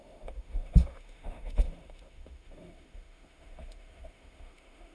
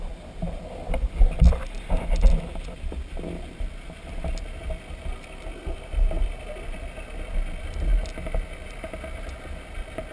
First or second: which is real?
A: second